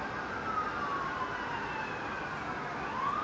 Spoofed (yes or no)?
no